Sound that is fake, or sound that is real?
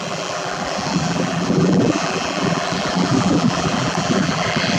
fake